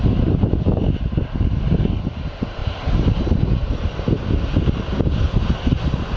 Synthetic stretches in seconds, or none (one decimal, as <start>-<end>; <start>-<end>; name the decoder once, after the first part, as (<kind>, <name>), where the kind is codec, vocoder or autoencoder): 2.6-3.2 (vocoder, BigVGAN v2)